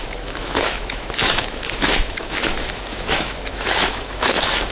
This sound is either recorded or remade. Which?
remade